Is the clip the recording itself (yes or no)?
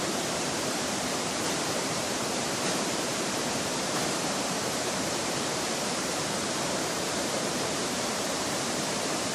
no